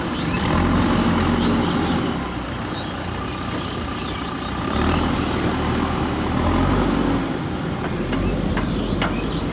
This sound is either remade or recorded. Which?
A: recorded